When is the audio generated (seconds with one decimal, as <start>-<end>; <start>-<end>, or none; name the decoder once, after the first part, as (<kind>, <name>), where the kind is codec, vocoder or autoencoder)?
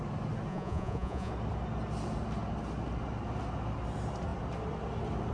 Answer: 0.5-1.3 (vocoder, Vocos)